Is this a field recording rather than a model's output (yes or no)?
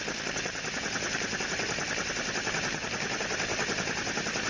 yes